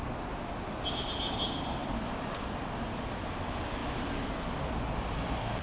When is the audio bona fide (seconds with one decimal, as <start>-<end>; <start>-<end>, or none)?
0.0-5.6